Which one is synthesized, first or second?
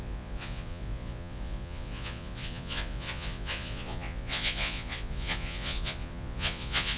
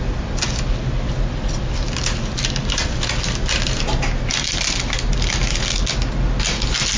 first